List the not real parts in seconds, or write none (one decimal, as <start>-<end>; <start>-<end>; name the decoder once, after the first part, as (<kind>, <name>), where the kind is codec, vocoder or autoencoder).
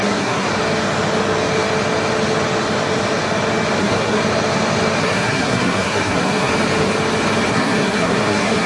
0.0-0.5 (codec, SNAC); 3.8-4.2; 5.0-6.5; 7.5-8.7